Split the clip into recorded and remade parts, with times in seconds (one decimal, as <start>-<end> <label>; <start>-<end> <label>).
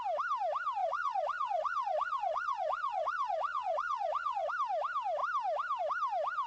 0.0-0.8 recorded; 0.8-4.5 remade; 4.5-6.5 recorded